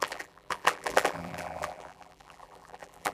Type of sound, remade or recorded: remade